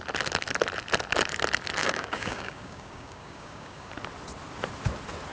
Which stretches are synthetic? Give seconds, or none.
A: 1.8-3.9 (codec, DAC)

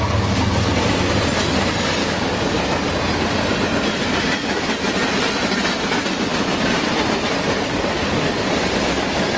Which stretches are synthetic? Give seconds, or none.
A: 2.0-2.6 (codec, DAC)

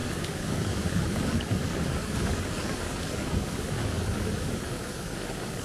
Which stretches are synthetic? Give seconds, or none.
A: 0.0-5.6 (codec, DAC)

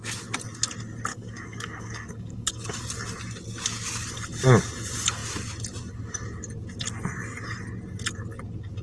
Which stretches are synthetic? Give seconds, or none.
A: 1.1-2.8 (codec, DAC)